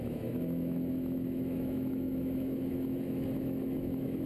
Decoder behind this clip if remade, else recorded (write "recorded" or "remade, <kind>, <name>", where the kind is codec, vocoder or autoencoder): remade, autoencoder, DAC-VAE